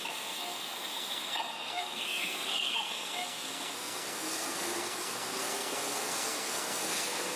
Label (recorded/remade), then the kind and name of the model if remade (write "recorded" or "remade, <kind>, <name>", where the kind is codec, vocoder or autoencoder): remade, codec, SNAC